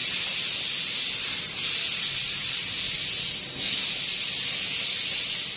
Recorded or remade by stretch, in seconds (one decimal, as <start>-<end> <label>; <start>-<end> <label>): 0.0-5.6 recorded

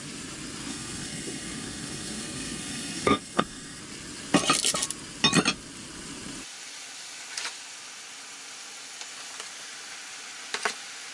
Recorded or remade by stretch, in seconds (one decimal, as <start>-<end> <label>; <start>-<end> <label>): 0.0-0.7 recorded; 0.7-3.8 remade; 3.8-11.1 recorded

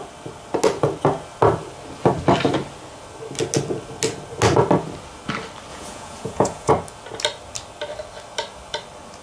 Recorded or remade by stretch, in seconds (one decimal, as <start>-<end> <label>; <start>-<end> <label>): 0.0-5.7 recorded; 5.7-6.7 remade; 6.7-9.2 recorded

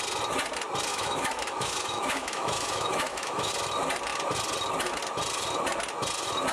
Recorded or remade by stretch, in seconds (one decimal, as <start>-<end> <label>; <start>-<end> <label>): 0.0-0.9 recorded; 0.9-3.5 remade; 3.5-6.5 recorded

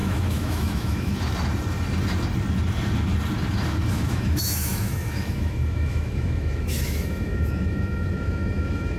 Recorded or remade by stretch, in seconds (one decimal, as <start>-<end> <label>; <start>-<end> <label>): 0.0-1.1 remade; 1.1-3.9 recorded; 3.9-9.0 remade

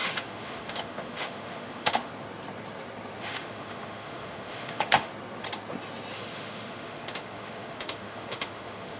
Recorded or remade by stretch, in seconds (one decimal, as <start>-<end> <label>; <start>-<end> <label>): 0.0-2.1 remade; 2.1-3.2 recorded; 3.2-5.1 remade; 5.1-6.1 recorded; 6.1-9.0 remade